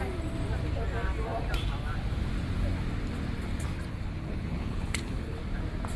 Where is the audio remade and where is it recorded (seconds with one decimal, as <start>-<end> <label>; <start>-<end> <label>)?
0.0-3.9 recorded; 3.9-5.4 remade; 5.4-6.0 recorded